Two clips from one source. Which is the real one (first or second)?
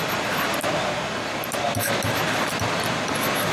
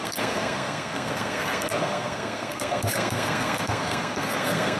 first